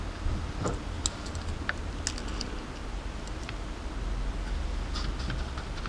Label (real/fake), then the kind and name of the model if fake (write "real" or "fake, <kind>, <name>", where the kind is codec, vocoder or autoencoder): real